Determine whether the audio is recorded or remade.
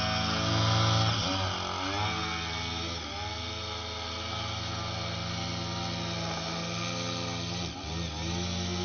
recorded